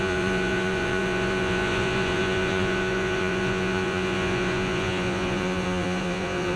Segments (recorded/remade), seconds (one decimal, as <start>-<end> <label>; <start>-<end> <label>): 0.0-6.6 remade